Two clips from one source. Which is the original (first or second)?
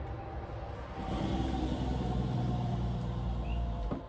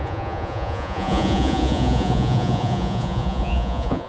first